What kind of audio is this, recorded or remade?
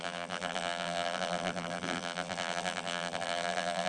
remade